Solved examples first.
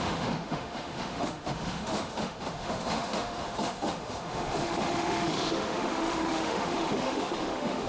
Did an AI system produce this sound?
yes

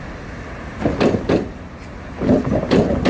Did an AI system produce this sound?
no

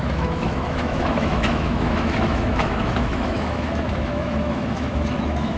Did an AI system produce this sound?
yes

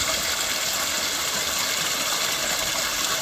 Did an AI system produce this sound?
no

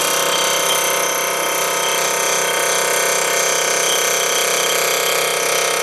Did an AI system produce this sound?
no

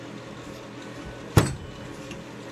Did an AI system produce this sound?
no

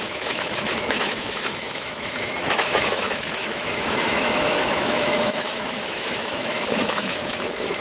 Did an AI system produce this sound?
yes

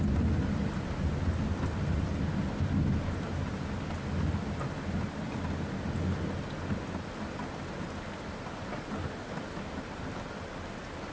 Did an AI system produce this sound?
no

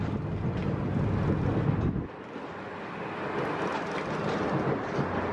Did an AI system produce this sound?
no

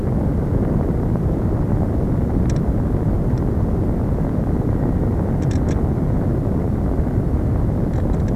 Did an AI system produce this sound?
no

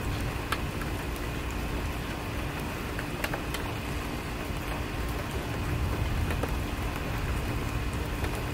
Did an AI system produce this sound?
no